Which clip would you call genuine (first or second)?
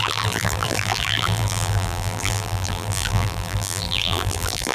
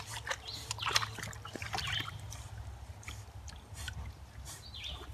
second